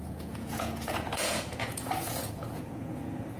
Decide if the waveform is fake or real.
fake